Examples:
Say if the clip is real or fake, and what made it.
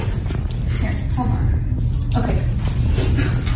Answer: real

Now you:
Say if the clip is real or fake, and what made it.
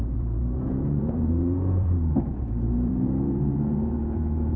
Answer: fake, vocoder, Vocos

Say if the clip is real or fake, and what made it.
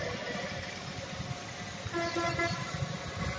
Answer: real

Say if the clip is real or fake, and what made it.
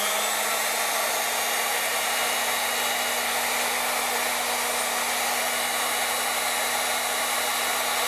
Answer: real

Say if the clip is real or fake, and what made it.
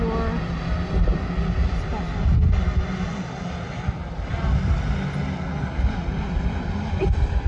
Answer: real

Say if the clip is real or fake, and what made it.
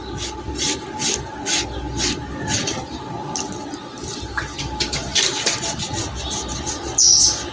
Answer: real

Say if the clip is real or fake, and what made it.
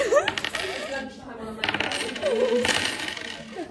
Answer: real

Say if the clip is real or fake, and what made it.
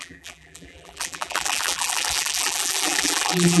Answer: fake, vocoder, BigVGAN v2